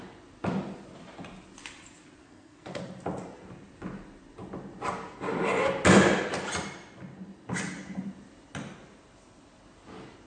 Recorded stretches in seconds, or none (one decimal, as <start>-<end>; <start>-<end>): 0.0-2.2; 2.8-10.3